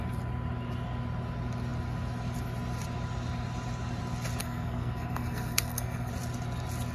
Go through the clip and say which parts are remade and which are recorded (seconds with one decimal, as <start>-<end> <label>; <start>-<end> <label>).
0.0-4.4 recorded; 4.4-6.1 remade; 6.1-6.9 recorded

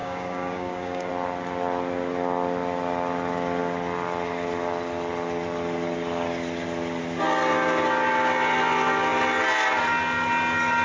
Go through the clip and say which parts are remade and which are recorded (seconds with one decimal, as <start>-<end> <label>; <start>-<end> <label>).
0.0-1.1 remade; 1.1-10.8 recorded